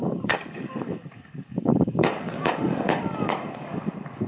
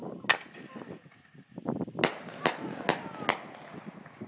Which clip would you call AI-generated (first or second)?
first